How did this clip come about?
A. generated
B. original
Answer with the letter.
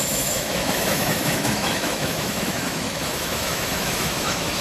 A